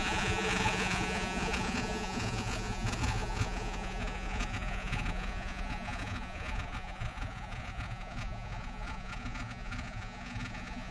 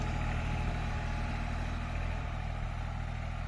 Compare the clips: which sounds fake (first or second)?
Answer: first